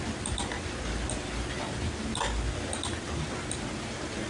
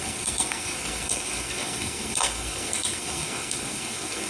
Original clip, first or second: first